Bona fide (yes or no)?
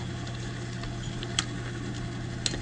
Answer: yes